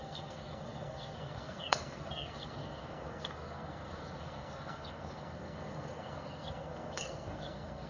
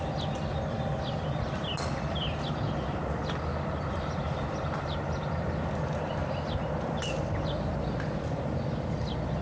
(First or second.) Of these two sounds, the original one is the second